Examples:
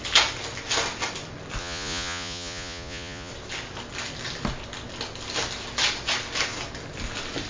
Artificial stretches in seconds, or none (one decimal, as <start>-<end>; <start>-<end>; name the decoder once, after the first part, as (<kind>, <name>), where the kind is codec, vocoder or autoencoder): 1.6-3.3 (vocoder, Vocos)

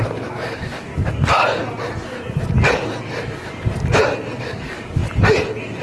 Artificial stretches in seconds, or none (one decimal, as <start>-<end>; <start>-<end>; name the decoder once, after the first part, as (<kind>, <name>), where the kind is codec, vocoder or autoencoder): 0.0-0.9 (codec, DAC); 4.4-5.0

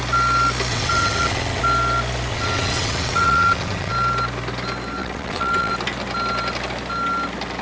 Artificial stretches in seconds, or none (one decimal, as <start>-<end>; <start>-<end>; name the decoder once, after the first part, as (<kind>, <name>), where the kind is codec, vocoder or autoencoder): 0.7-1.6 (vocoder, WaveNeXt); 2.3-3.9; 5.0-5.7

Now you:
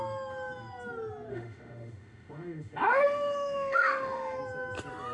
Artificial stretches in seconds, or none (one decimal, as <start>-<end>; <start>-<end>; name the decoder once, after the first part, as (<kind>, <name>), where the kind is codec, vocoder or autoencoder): 1.3-4.4 (autoencoder, DAC-VAE)

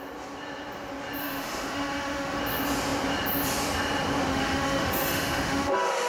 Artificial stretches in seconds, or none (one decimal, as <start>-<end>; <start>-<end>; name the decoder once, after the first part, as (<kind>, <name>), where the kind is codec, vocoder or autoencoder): 1.2-2.4 (autoencoder, DAC-VAE); 4.3-6.1

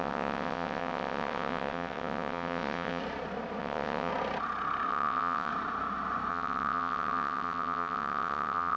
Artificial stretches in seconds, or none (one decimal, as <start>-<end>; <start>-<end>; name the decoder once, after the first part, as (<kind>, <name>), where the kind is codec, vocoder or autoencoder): 0.0-3.0 (vocoder, WaveNeXt); 3.6-4.1; 4.9-5.5; 6.3-8.8

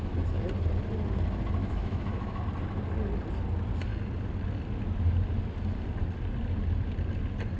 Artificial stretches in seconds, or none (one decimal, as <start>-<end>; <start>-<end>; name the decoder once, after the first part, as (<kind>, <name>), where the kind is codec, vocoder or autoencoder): 1.6-2.4 (autoencoder, DAC-VAE)